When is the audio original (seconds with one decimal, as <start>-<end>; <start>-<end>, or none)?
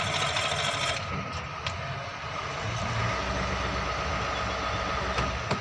0.0-5.6